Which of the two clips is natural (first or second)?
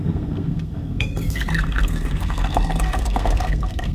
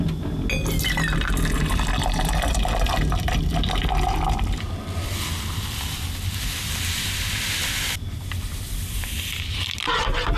second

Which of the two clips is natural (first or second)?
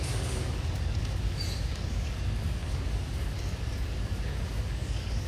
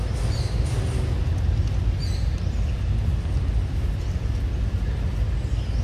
second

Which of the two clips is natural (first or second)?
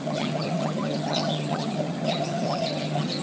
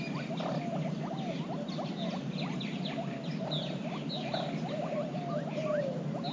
second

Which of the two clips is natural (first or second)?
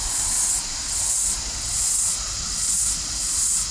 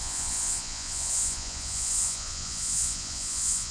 first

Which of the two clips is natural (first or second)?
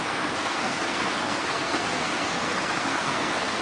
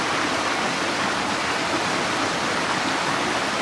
second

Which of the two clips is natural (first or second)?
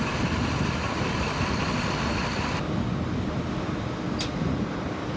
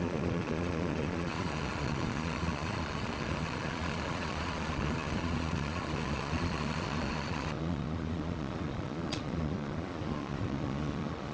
first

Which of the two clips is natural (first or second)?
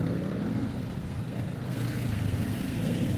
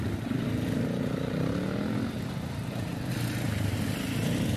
second